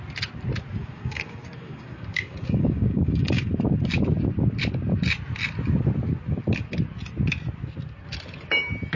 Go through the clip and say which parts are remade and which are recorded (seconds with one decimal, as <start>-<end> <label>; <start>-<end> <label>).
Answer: 0.0-0.8 recorded; 0.8-3.5 remade; 3.5-9.0 recorded